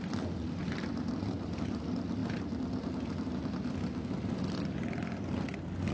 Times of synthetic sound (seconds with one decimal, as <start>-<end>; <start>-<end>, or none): none